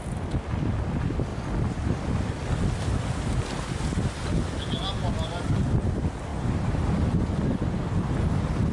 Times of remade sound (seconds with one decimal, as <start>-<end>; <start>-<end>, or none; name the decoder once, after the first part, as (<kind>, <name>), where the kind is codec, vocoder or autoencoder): none